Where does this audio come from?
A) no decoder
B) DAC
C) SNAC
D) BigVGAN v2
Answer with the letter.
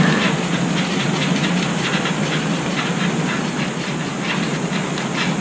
A